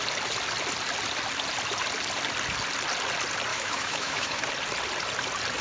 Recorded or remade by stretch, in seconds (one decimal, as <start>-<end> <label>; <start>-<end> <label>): 0.0-3.5 recorded; 3.5-4.4 remade; 4.4-5.6 recorded